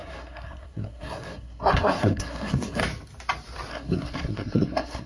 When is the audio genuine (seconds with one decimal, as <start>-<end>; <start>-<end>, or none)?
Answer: 2.8-3.7